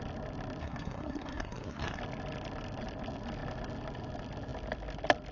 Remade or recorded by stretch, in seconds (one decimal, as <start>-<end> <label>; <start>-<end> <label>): 0.0-0.6 recorded; 0.6-2.0 remade; 2.0-5.3 recorded